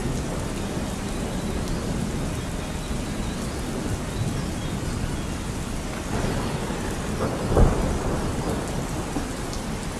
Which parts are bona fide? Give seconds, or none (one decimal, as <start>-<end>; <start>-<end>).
0.0-10.0